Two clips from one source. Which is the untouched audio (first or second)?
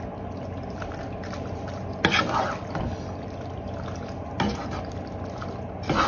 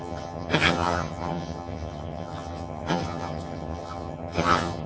first